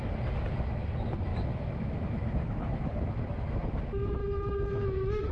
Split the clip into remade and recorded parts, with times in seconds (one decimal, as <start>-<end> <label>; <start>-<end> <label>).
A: 0.0-1.3 recorded; 1.3-3.2 remade; 3.2-4.2 recorded; 4.2-5.3 remade